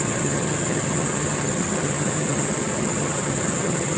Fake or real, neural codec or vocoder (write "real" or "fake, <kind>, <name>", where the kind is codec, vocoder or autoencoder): fake, vocoder, HiFi-GAN